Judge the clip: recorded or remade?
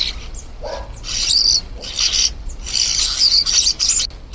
recorded